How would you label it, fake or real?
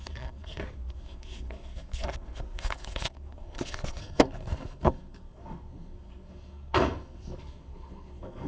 fake